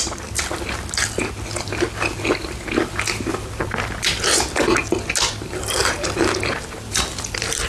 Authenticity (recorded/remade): recorded